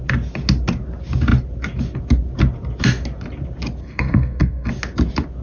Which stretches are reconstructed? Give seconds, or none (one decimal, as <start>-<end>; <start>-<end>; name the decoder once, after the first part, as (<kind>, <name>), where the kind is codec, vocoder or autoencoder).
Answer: 3.8-4.7 (codec, SNAC)